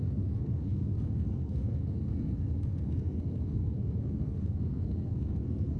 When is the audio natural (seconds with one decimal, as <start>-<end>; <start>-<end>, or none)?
none